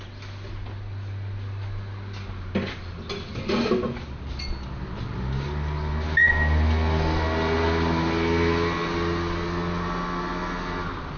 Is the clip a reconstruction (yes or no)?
no